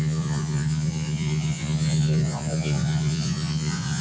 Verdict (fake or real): fake